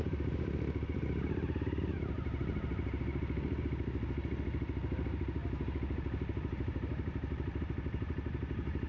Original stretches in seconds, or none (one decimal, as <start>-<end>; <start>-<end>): 0.0-8.9